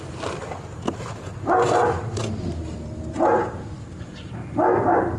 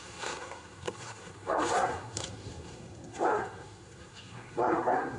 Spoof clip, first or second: second